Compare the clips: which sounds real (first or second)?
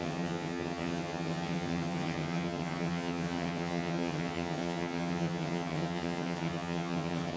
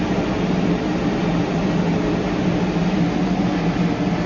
second